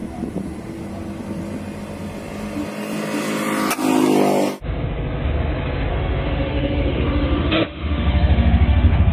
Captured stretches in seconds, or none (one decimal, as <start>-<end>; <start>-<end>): 0.0-5.9